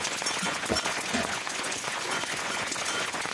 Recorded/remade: remade